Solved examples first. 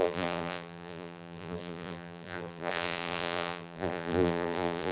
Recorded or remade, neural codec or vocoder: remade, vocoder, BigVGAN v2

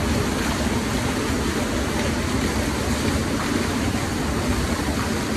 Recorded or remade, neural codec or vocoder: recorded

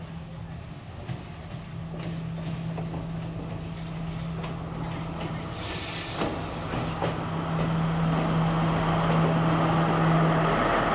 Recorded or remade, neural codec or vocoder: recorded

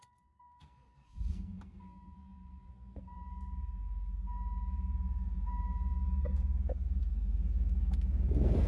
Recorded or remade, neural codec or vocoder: remade, codec, SNAC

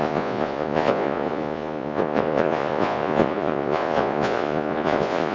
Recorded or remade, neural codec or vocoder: remade, vocoder, Vocos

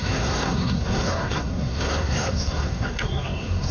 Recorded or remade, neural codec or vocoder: remade, codec, SNAC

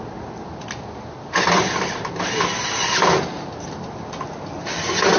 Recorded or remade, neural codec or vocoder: recorded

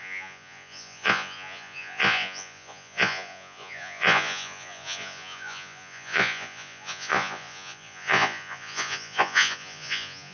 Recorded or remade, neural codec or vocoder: remade, vocoder, Vocos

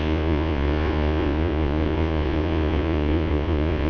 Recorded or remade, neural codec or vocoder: remade, vocoder, Vocos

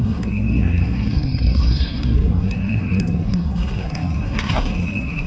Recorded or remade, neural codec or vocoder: remade, codec, SNAC